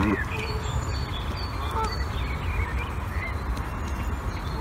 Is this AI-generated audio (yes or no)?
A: no